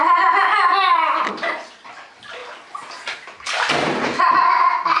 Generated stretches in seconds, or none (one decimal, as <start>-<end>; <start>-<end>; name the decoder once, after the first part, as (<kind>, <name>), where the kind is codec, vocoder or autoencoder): none